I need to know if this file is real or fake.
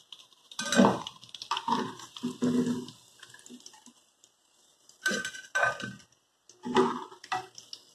real